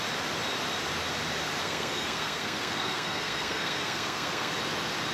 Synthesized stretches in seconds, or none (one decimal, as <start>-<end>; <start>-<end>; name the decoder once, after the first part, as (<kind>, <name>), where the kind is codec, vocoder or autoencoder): 1.6-4.5 (codec, SNAC)